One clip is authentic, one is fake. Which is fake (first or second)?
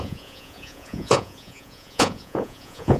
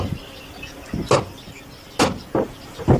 first